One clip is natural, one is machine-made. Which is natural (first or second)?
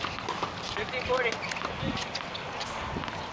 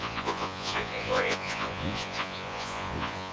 first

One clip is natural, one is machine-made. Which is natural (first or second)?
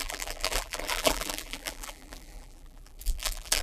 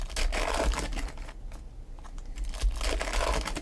second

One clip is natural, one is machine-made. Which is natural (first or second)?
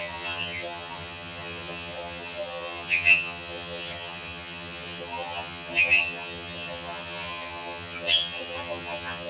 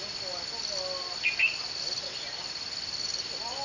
second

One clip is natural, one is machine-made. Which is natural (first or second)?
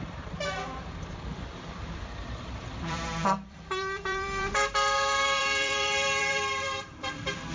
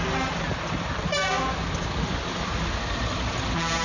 second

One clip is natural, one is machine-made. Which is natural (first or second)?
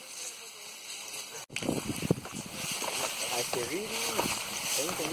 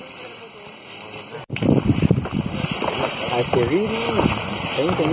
first